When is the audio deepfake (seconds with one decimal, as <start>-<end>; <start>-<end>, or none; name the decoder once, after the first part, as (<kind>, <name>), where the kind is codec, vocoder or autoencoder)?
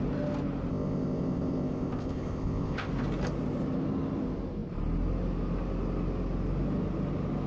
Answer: 0.7-2.9 (codec, ZipCodec)